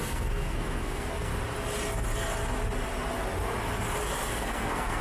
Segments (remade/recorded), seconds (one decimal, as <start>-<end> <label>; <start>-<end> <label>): 0.0-1.3 remade; 1.3-4.3 recorded; 4.3-5.0 remade